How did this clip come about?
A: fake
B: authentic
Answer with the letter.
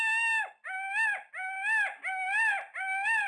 B